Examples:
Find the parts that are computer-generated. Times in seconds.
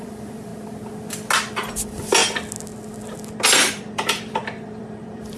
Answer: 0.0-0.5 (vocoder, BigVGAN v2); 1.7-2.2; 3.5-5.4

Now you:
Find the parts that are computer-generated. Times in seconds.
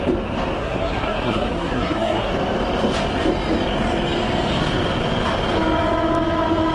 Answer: 0.6-2.3 (codec, SNAC)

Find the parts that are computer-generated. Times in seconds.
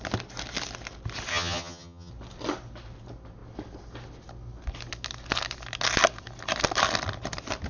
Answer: 1.3-2.1 (vocoder, HiFi-GAN)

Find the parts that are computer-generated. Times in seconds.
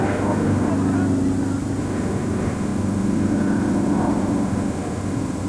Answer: 0.0-0.7 (autoencoder, DAC-VAE); 1.8-5.5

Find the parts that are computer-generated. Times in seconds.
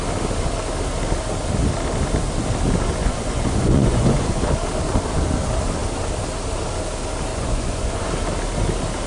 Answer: 3.0-4.4 (vocoder, Vocos); 7.3-8.1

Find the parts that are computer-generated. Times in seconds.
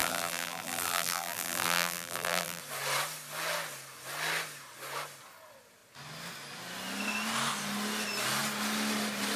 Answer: 0.0-2.6 (vocoder, BigVGAN v2)